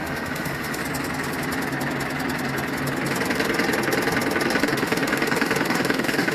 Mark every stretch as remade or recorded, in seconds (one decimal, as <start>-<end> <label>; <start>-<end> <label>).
0.0-0.8 remade; 0.8-4.6 recorded; 4.6-6.3 remade